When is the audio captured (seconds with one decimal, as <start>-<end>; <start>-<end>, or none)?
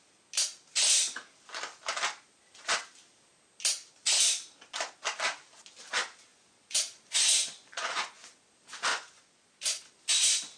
0.0-6.3; 8.5-8.9; 9.8-10.6